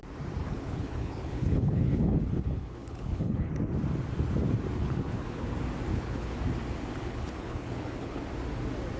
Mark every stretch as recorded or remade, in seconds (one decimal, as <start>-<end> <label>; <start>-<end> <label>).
0.0-0.4 recorded; 0.4-3.5 remade; 3.5-4.8 recorded; 4.8-5.5 remade; 5.5-5.9 recorded; 5.9-6.4 remade; 6.4-7.0 recorded; 7.0-8.2 remade; 8.2-9.0 recorded